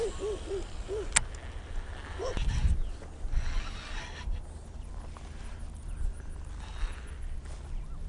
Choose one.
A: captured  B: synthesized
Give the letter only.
A